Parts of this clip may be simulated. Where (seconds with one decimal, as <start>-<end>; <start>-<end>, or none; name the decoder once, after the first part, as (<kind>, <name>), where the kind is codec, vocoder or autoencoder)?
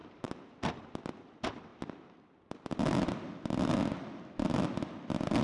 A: 0.0-0.9 (vocoder, BigVGAN v2)